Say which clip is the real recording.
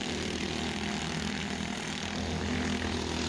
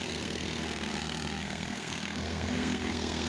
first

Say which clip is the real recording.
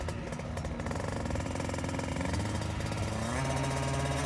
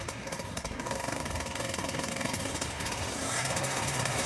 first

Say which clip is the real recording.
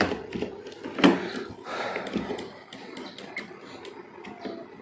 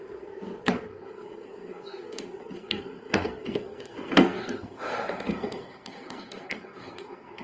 first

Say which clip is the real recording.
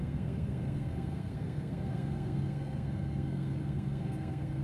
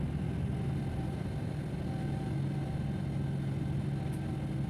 second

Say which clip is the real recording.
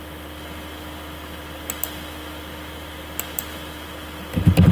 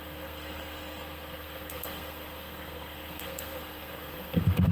first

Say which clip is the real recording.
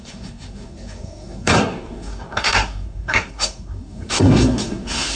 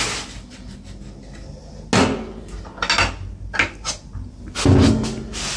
second